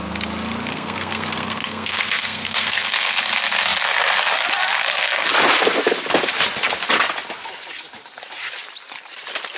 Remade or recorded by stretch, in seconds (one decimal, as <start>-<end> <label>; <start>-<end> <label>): 0.0-0.7 recorded; 0.7-3.2 remade; 3.2-9.6 recorded